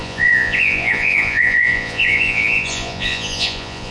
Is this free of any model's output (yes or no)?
no